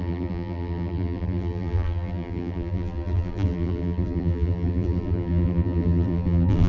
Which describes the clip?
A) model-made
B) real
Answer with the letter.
A